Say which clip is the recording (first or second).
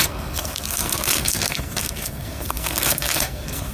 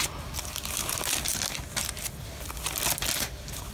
second